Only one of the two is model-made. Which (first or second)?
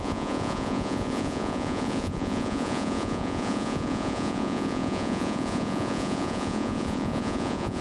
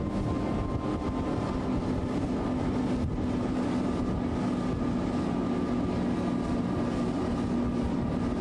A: first